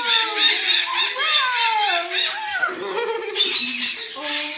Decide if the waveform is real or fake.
real